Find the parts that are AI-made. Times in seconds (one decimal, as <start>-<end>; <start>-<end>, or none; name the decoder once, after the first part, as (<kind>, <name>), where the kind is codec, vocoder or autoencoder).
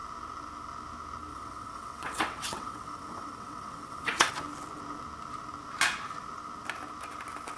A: 1.3-4.3 (vocoder, WaveNeXt)